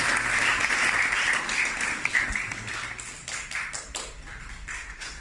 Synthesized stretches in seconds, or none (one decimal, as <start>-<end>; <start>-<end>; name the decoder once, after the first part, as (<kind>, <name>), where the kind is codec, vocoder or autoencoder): 4.7-5.2 (codec, SNAC)